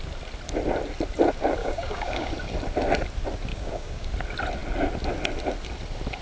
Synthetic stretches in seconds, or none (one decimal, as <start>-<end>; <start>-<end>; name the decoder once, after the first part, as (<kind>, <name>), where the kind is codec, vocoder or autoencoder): 1.6-2.3 (codec, DAC); 3.5-4.1